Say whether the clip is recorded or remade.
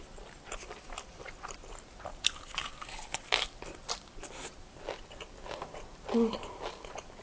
recorded